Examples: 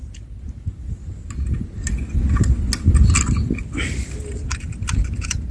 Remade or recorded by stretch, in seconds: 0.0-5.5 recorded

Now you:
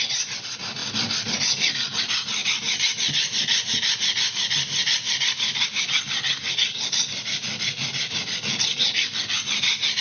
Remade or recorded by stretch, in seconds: 0.0-10.0 recorded